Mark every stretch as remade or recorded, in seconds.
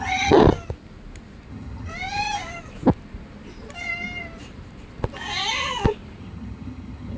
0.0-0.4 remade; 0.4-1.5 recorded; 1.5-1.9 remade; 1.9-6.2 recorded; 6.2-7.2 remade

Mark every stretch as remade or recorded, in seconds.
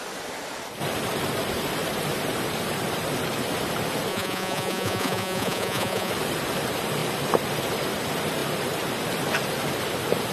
0.0-4.1 recorded; 4.1-6.1 remade; 6.1-10.3 recorded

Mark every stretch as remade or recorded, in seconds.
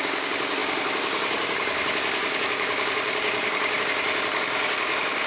0.0-5.3 remade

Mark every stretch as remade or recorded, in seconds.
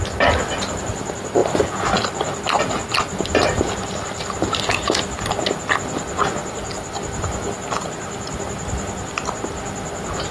0.0-10.3 recorded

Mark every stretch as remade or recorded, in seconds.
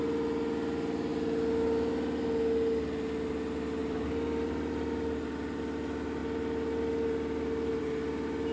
0.0-3.8 recorded; 3.8-5.6 remade; 5.6-6.2 recorded; 6.2-7.8 remade; 7.8-8.5 recorded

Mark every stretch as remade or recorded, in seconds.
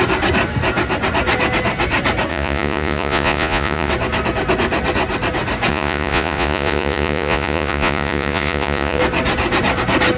0.0-2.3 recorded; 2.3-3.9 remade; 3.9-5.7 recorded; 5.7-9.0 remade; 9.0-10.2 recorded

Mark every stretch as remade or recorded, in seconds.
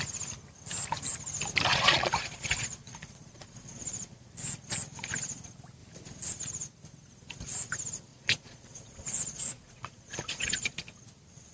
0.0-1.7 recorded; 1.7-4.3 remade; 4.3-8.1 recorded; 8.1-10.8 remade; 10.8-11.5 recorded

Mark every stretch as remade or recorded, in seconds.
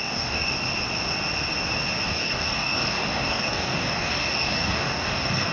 0.0-0.5 remade; 0.5-2.0 recorded; 2.0-5.5 remade